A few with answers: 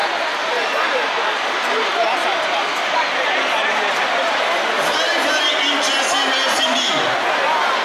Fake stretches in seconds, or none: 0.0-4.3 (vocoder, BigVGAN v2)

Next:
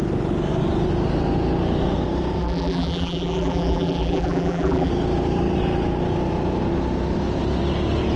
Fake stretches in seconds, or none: 2.4-4.9 (vocoder, BigVGAN v2)

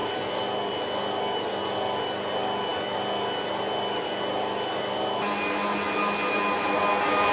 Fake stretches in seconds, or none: none

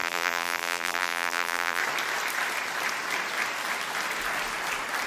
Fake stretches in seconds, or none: 0.0-1.8 (vocoder, BigVGAN v2)

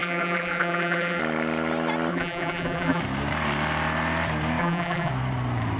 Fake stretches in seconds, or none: 0.0-1.2 (vocoder, BigVGAN v2); 2.1-3.0; 4.6-5.1

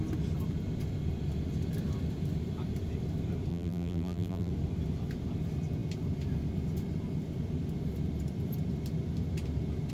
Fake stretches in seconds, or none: 3.5-4.5 (vocoder, BigVGAN v2)

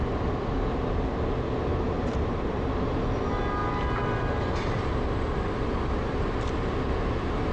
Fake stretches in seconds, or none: 1.7-3.0 (vocoder, BigVGAN v2)

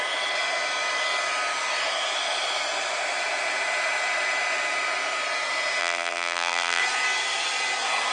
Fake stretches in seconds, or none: 5.8-6.8 (vocoder, BigVGAN v2)